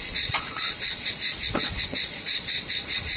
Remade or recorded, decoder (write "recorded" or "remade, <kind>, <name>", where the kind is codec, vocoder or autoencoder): remade, vocoder, Vocos